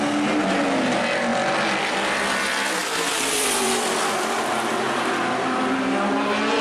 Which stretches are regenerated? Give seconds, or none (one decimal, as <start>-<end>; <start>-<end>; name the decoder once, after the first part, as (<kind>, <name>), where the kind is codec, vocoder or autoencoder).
2.8-5.1 (vocoder, BigVGAN v2)